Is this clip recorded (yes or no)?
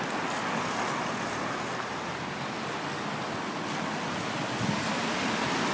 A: yes